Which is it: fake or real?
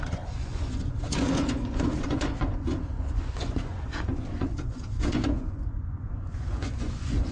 fake